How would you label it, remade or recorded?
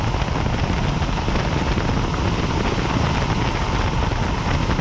recorded